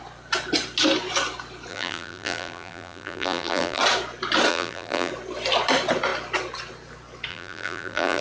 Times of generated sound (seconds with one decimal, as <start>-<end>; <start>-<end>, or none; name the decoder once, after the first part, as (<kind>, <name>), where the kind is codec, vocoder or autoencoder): 1.7-3.8 (vocoder, BigVGAN v2); 4.5-5.1; 7.3-8.2